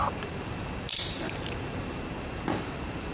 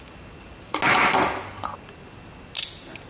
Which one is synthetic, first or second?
first